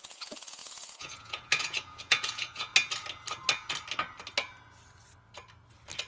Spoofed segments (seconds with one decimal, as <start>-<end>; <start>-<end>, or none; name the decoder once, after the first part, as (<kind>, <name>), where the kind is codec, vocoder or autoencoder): 0.0-2.7 (vocoder, Vocos)